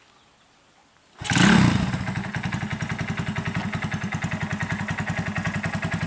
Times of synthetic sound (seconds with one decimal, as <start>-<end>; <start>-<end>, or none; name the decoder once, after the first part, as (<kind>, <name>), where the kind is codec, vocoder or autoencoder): none